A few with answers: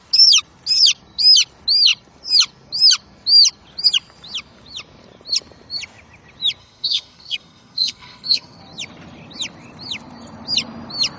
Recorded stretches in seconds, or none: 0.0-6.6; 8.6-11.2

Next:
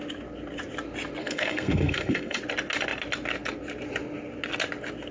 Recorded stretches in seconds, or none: 0.0-1.2; 2.4-5.1

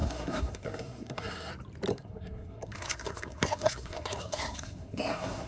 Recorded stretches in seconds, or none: 1.5-1.9

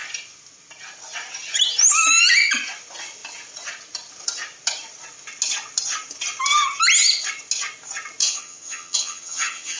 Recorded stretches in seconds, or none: 0.0-8.2